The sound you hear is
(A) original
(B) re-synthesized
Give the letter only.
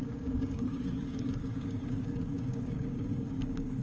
B